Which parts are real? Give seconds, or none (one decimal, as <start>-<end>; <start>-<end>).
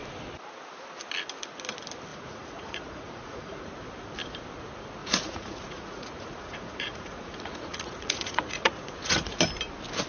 0.0-2.1; 3.7-5.0; 9.4-10.1